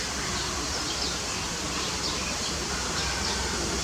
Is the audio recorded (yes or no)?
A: yes